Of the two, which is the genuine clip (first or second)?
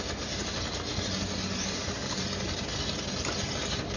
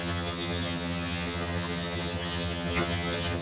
first